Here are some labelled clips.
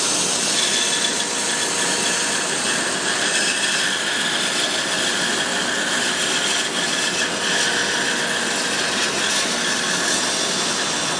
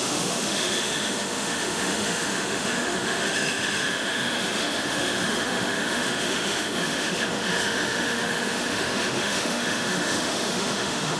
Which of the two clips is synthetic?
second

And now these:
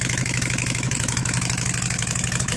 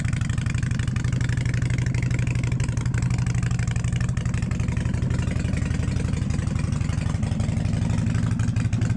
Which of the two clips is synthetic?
first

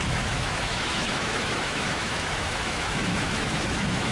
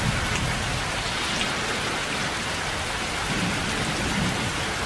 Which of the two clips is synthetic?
first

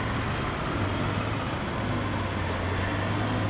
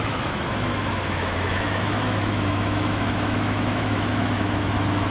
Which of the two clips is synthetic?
second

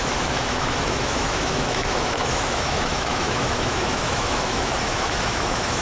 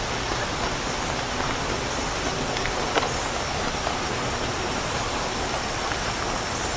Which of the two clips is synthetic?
first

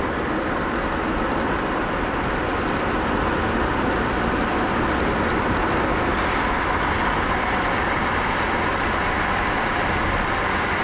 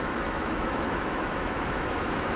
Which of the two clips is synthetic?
second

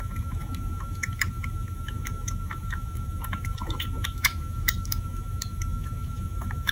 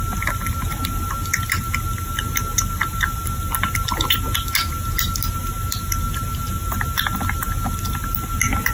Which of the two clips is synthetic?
first